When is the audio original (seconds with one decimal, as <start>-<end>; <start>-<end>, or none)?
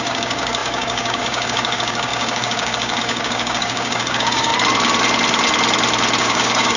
4.5-6.2